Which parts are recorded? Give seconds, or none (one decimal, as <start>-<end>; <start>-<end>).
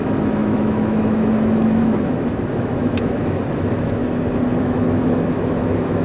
4.0-4.6